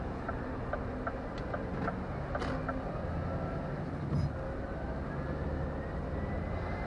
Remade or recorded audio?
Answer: recorded